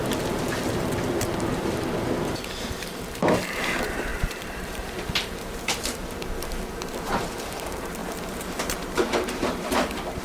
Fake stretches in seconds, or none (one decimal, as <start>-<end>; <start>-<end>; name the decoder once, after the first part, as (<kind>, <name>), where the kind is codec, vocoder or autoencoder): 0.0-10.2 (vocoder, BigVGAN v2)